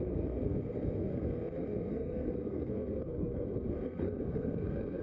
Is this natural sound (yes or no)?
no